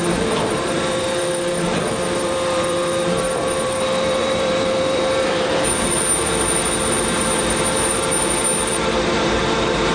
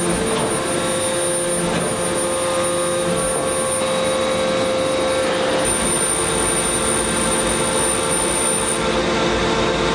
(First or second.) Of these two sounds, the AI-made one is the first